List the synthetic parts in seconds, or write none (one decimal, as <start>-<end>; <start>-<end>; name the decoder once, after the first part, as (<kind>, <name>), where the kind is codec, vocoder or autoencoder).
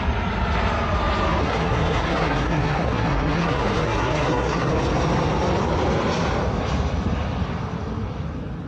1.4-4.7 (codec, SNAC)